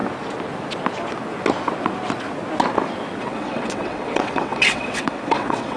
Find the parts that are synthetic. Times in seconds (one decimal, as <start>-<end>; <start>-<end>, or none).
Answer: 3.2-5.8